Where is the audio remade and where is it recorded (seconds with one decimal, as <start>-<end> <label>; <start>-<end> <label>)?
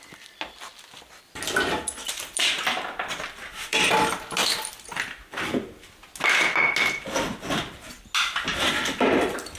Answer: 0.0-2.0 recorded; 2.0-4.0 remade; 4.0-8.5 recorded; 8.5-9.6 remade